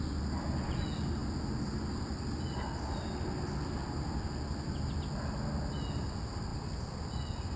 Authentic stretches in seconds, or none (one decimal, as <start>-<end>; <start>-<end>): 0.0-7.6